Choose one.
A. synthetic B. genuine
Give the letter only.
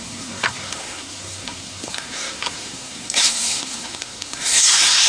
A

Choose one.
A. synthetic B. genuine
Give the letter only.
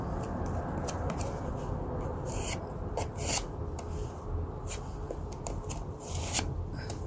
B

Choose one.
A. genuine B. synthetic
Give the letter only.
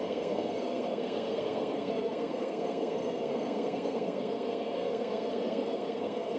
B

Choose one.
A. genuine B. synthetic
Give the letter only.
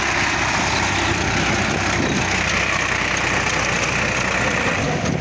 A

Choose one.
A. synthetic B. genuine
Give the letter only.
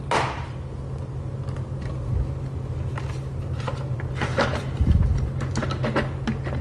B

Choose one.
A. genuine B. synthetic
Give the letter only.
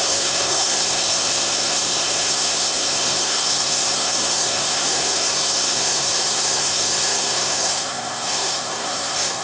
B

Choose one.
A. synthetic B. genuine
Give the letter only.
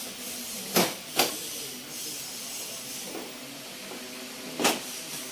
B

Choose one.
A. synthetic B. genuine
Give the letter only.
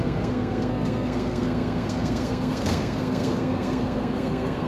A